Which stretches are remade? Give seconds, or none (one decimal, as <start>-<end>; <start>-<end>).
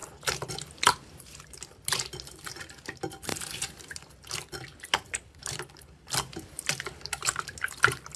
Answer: none